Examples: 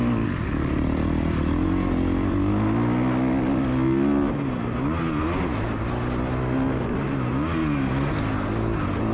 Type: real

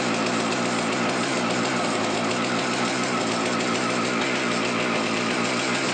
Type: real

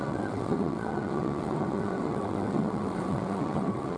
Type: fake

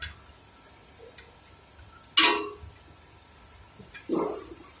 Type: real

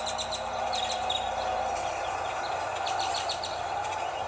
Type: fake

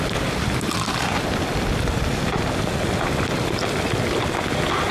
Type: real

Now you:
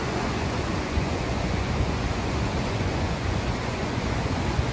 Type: fake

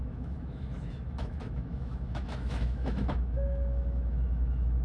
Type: fake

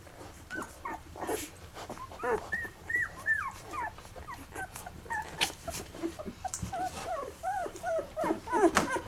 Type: fake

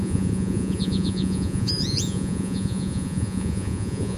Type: fake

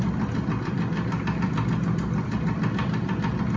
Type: real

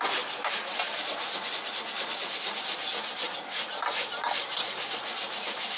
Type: real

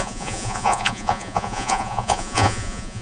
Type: fake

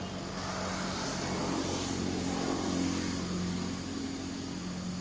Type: real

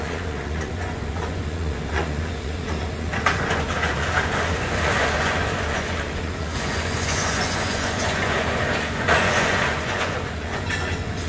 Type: fake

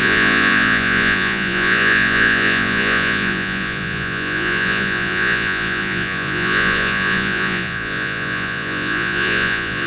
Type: fake